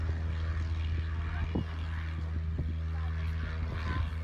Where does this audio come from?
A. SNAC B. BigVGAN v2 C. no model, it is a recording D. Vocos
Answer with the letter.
C